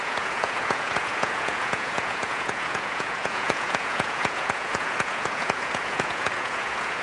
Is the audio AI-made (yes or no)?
yes